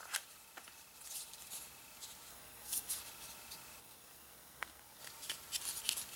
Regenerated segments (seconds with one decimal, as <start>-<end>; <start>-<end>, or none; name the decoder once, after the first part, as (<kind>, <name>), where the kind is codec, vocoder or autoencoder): 2.3-3.0 (codec, SNAC); 3.8-5.0